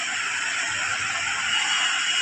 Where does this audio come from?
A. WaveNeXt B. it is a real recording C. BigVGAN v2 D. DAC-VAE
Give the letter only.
C